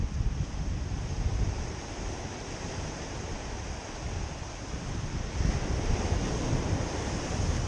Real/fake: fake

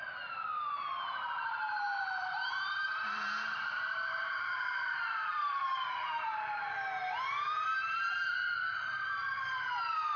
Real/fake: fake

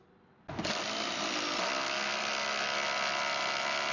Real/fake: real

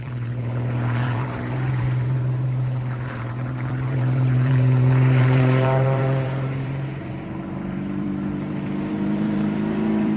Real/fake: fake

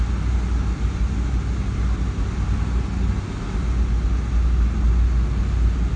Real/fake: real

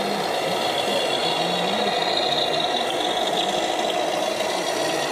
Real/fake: real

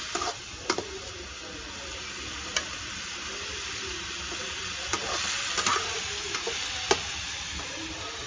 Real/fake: real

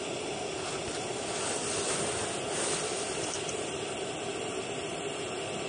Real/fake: real